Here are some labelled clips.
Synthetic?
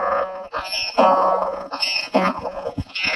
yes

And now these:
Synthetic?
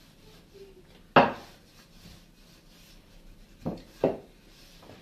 no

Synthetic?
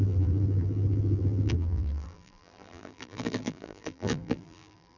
yes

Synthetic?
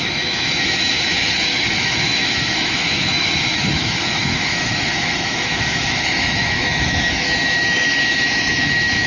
yes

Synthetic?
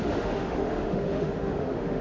yes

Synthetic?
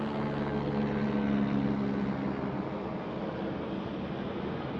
no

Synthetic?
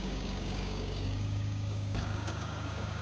yes